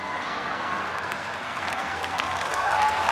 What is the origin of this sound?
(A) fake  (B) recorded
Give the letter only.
A